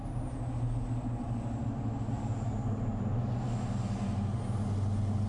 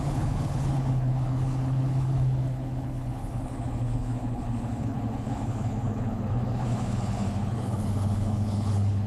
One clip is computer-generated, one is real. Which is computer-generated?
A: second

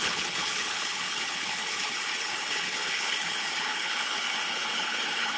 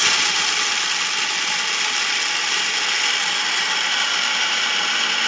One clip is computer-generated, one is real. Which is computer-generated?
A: first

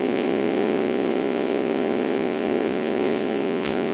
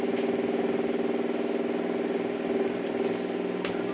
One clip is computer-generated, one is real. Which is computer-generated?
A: first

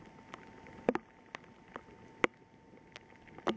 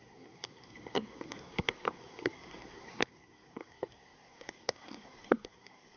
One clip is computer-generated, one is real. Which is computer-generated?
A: second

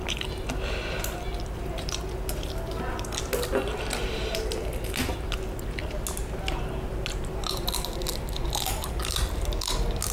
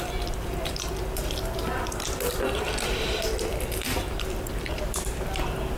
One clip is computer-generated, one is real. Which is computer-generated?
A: second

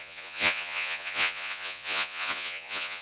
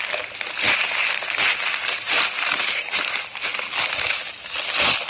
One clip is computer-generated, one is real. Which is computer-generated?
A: first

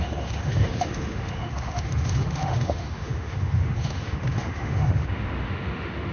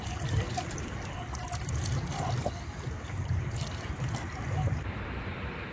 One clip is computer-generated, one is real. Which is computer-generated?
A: first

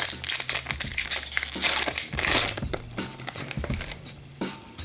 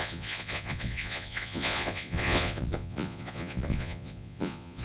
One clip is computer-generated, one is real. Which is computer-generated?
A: second